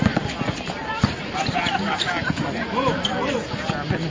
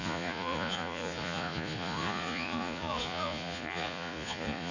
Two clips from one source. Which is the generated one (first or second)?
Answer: second